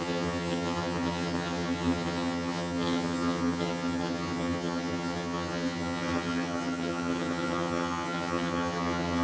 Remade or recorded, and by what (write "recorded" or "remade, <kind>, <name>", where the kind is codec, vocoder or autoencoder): remade, vocoder, HiFi-GAN